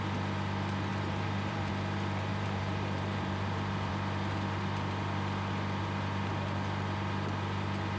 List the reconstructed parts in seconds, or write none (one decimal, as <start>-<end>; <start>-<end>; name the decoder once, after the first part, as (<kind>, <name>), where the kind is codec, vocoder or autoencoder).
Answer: 0.9-1.7 (vocoder, BigVGAN v2); 2.3-3.9